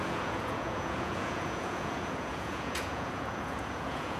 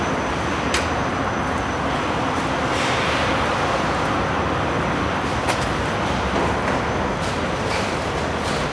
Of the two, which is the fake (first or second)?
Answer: first